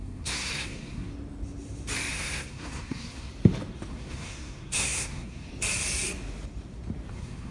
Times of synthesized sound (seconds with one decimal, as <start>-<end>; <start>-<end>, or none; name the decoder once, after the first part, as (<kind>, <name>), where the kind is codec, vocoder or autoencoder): 0.0-1.1 (codec, SNAC); 2.1-3.3; 3.9-5.5; 7.1-7.5